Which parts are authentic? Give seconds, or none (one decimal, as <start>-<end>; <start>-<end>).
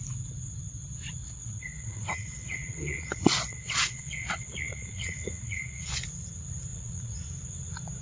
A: 0.0-1.2; 6.0-6.7; 7.2-8.0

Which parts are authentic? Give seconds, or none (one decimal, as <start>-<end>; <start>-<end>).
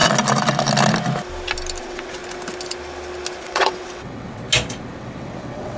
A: 0.0-1.8; 2.2-3.4; 4.4-5.0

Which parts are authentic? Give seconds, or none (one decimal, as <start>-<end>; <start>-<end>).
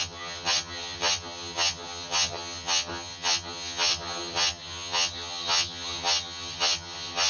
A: none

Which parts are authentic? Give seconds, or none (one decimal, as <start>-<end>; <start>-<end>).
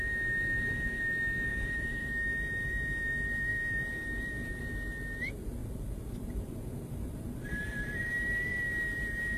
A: 0.0-1.5; 2.1-5.6; 8.1-9.4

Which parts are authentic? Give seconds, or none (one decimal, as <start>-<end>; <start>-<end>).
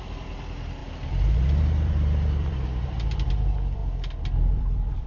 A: 3.8-4.5